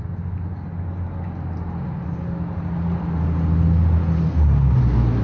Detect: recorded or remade recorded